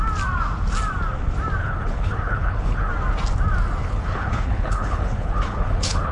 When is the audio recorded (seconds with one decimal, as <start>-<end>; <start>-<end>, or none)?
0.0-1.6; 2.9-3.8